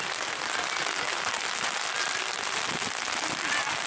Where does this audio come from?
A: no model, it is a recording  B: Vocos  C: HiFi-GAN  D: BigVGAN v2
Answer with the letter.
A